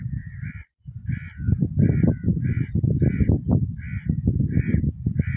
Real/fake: fake